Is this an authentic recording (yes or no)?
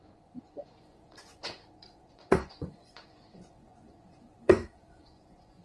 no